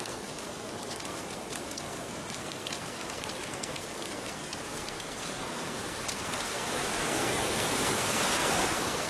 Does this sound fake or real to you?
fake